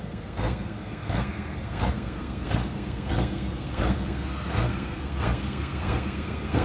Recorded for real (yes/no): no